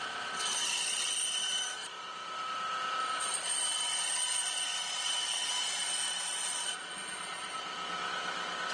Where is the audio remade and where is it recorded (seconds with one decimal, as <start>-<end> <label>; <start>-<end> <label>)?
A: 0.0-3.0 recorded; 3.0-3.5 remade; 3.5-5.8 recorded; 5.8-7.6 remade; 7.6-8.7 recorded